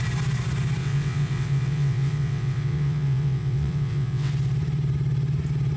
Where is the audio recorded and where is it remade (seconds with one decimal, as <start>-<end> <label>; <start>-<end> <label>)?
0.0-0.8 recorded; 0.8-4.3 remade; 4.3-5.8 recorded